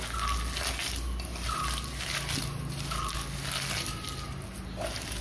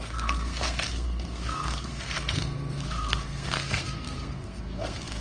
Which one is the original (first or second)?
first